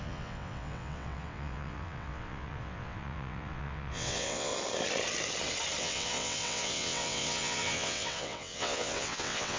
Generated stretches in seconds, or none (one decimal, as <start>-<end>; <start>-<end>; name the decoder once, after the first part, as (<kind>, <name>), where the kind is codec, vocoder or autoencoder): 0.0-4.5 (vocoder, WaveNeXt); 5.8-9.6